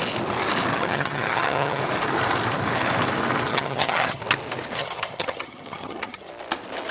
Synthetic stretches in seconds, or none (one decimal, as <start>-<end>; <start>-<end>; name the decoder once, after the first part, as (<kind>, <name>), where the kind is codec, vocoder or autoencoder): 0.7-1.8 (vocoder, HiFi-GAN); 3.5-4.2; 4.8-6.3